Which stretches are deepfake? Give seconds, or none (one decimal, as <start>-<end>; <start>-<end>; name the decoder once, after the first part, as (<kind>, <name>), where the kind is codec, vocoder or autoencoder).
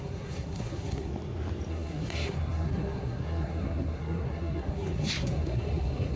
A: 0.0-1.1 (codec, SNAC); 1.7-6.2